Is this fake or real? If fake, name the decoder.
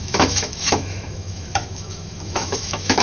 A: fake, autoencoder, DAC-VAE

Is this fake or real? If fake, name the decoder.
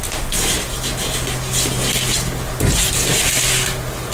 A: real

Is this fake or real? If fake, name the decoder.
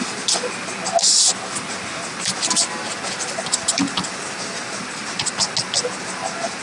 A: real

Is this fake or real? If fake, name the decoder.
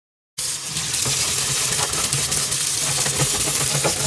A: real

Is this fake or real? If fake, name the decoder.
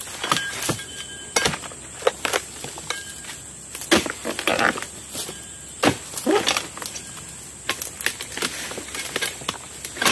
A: real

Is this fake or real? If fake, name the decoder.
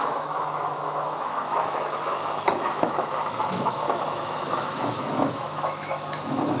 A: fake, autoencoder, DAC-VAE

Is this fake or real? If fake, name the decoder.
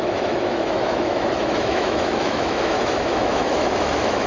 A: fake, autoencoder, DAC-VAE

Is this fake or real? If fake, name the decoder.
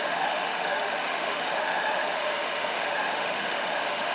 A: fake, autoencoder, DAC-VAE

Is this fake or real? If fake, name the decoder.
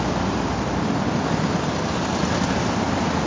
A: real